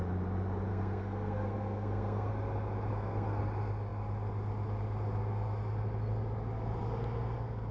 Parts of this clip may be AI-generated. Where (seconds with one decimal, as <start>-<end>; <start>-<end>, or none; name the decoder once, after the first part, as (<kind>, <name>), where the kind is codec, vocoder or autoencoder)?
0.7-2.3 (codec, SNAC); 2.9-3.4